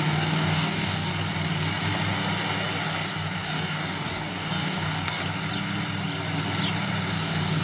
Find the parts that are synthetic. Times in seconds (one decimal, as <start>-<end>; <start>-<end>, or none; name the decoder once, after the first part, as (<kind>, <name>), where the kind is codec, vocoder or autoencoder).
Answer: 0.0-1.1 (codec, DAC); 3.4-5.2; 7.1-7.6